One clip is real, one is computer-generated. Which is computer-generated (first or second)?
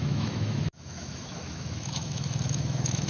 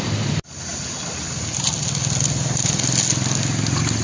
first